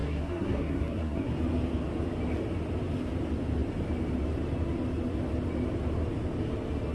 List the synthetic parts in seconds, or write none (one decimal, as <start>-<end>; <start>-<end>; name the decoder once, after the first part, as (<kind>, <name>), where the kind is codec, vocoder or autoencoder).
0.0-1.3 (codec, SNAC)